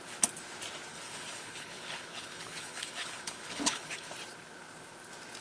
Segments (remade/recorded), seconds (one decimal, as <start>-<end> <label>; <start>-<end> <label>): 0.0-0.9 recorded; 0.9-4.1 remade; 4.1-5.4 recorded